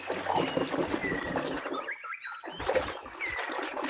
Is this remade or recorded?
recorded